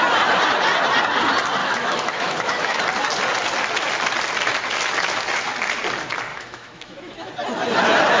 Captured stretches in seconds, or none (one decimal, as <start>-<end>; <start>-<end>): 0.0-1.6; 2.8-6.3; 7.3-8.2